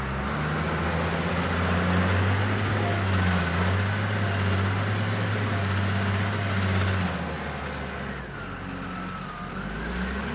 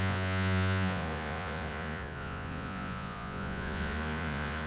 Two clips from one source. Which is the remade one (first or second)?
second